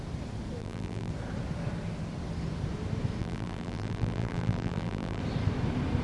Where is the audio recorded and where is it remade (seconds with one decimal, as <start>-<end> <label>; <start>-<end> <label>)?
0.0-0.6 recorded; 0.6-1.1 remade; 1.1-3.2 recorded; 3.2-5.2 remade; 5.2-6.0 recorded